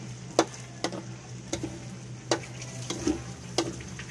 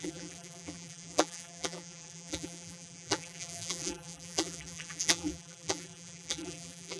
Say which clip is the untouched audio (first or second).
first